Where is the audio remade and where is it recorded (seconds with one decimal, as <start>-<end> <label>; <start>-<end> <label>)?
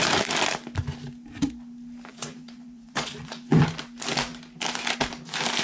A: 0.0-2.1 recorded; 2.1-3.6 remade; 3.6-5.6 recorded